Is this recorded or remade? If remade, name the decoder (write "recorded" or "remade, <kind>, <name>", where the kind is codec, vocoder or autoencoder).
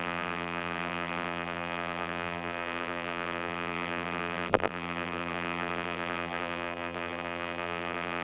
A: remade, vocoder, BigVGAN v2